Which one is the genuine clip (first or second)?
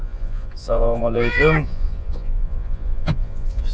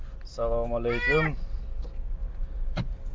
second